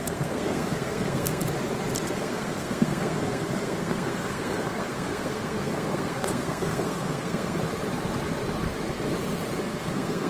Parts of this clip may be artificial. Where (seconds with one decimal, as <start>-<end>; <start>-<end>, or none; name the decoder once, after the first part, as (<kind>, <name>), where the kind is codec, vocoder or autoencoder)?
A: 0.0-1.4 (codec, SNAC); 2.1-7.6; 9.6-10.3